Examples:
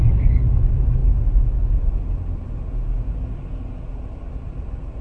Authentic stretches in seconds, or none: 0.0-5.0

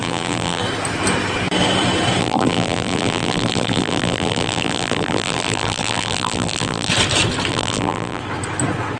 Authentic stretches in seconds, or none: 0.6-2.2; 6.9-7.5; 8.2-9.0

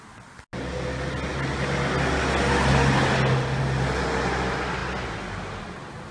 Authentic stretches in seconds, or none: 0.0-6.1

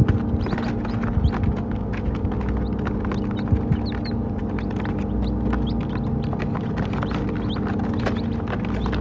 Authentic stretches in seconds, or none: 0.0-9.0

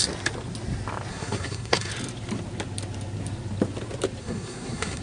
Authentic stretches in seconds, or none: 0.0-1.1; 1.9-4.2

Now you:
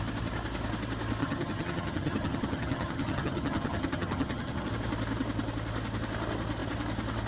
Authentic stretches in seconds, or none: 0.0-1.2; 4.7-7.3